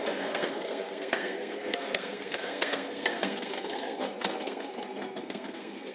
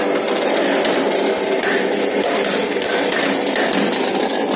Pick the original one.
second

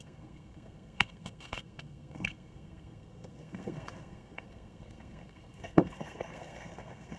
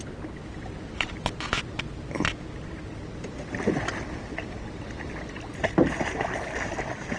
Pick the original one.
second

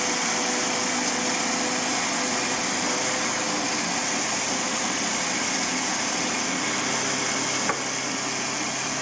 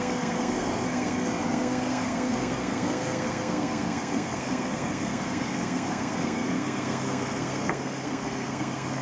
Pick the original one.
first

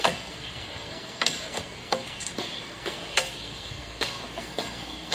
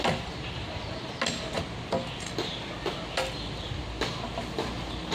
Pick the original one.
second